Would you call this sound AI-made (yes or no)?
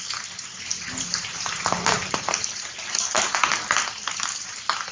no